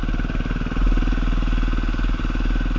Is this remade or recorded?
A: recorded